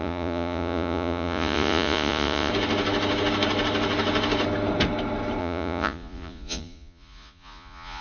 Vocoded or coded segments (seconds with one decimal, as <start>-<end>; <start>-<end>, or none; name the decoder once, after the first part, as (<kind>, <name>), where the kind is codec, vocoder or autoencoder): 0.0-2.5 (vocoder, Vocos); 5.4-8.0